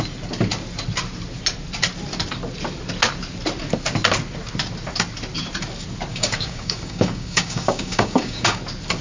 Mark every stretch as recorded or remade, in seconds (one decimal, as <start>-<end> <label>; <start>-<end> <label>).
0.0-6.1 recorded; 6.1-8.6 remade; 8.6-9.0 recorded